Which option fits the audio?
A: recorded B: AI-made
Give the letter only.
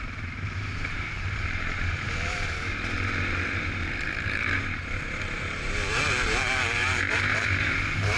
B